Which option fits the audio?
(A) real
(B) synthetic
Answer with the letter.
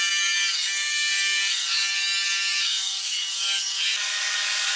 B